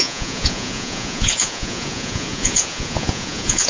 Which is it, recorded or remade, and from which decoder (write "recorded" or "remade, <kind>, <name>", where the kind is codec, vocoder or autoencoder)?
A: remade, vocoder, Vocos